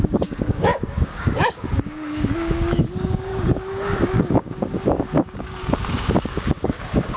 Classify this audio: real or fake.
fake